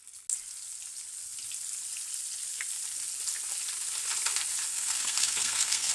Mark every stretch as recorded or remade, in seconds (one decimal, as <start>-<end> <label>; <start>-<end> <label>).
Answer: 0.0-4.7 recorded; 4.7-5.9 remade